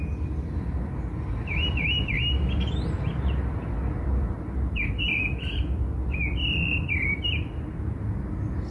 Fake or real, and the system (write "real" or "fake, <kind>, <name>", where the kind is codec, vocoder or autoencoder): real